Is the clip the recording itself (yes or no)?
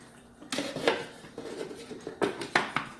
yes